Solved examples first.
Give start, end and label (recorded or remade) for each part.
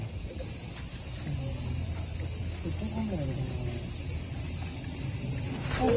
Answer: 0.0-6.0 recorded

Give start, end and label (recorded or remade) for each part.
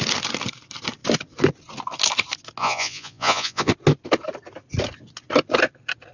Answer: 0.0-2.6 recorded; 2.6-3.7 remade; 3.7-6.1 recorded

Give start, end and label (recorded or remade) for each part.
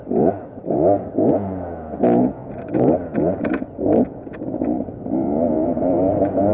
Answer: 0.0-6.5 remade